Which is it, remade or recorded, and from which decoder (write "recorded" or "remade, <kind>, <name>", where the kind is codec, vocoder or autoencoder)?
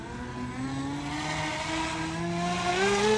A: recorded